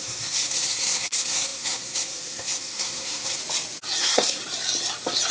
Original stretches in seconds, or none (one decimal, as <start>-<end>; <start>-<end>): 3.4-4.0; 4.4-5.3